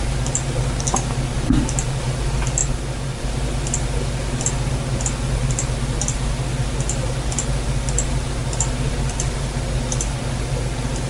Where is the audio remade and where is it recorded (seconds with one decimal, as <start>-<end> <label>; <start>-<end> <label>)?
0.0-11.1 recorded

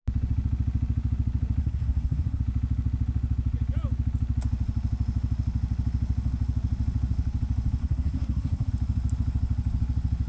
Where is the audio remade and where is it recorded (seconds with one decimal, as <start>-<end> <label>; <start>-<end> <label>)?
0.0-1.6 recorded; 1.6-2.4 remade; 2.4-7.8 recorded; 7.8-8.7 remade; 8.7-10.3 recorded

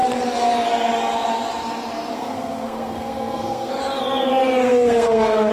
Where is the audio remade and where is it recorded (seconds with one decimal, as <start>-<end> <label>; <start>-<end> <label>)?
0.0-2.1 recorded; 2.1-3.7 remade; 3.7-4.6 recorded; 4.6-5.5 remade

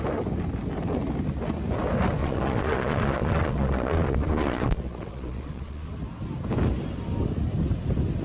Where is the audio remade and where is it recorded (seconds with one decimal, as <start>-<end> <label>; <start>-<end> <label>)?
0.0-2.2 recorded; 2.2-5.9 remade; 5.9-8.2 recorded

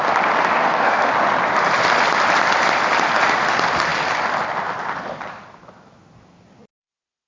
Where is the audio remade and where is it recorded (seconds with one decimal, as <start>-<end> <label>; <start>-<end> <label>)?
0.0-0.6 recorded; 0.6-1.1 remade; 1.1-7.3 recorded